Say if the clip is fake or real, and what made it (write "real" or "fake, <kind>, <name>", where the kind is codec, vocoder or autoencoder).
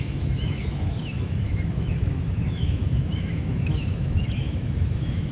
fake, autoencoder, DAC-VAE